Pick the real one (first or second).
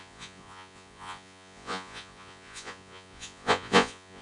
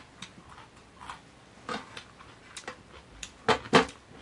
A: second